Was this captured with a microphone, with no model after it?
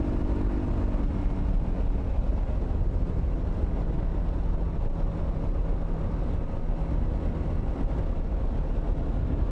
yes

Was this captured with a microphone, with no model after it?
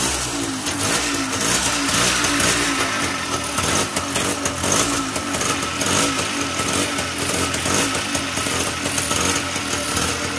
yes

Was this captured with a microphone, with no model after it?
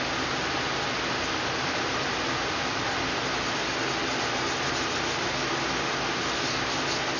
yes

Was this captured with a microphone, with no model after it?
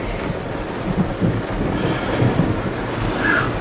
yes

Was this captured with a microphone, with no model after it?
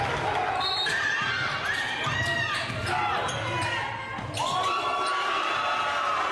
yes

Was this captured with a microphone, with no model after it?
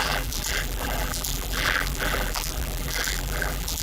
no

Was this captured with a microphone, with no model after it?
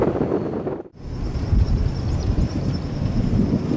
yes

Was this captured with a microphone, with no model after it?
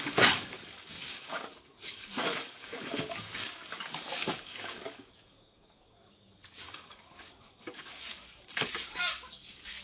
no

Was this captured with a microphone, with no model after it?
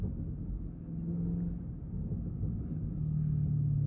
yes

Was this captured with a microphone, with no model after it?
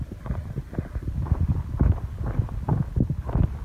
yes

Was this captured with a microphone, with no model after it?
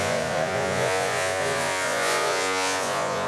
no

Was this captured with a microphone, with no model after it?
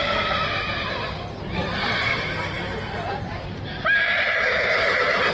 yes